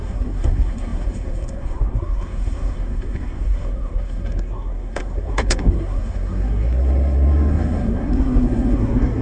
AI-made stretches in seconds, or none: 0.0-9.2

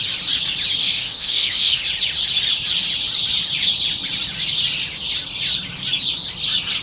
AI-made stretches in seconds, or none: 0.8-1.8

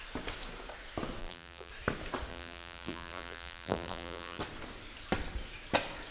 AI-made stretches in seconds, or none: 1.2-1.7; 2.3-4.4